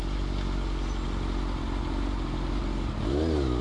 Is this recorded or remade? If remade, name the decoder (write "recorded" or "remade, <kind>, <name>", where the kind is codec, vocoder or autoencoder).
recorded